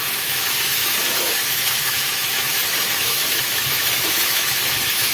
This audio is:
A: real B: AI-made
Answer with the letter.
B